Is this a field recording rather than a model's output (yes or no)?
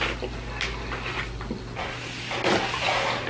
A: yes